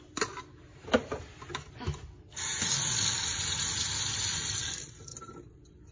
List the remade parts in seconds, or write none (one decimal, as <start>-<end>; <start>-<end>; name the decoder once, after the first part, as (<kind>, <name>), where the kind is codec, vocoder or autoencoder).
0.6-1.4 (vocoder, BigVGAN v2); 5.1-5.9